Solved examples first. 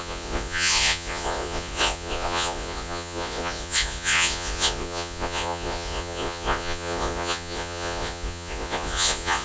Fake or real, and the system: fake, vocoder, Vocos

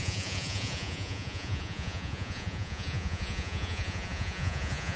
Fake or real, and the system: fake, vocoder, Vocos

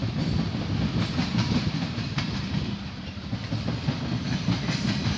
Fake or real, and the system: fake, vocoder, BigVGAN v2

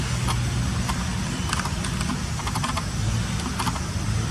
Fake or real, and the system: real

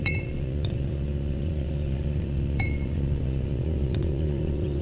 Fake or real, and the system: fake, vocoder, Vocos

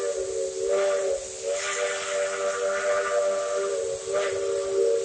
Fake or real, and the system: real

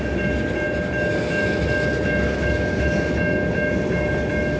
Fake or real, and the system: real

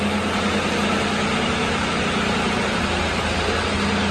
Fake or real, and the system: real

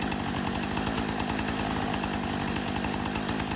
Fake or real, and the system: real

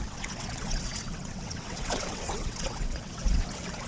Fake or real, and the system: fake, vocoder, WaveNeXt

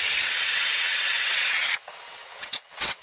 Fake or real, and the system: fake, vocoder, WaveNeXt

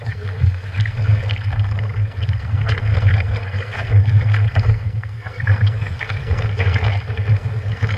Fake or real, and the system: fake, codec, SNAC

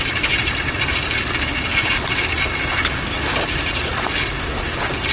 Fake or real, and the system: real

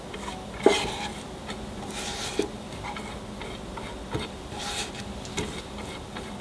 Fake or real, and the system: real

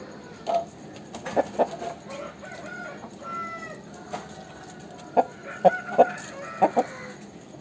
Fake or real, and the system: real